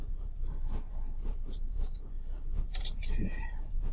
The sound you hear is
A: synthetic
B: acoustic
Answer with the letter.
A